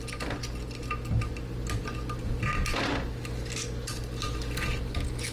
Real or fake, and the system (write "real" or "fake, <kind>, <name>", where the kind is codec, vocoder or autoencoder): real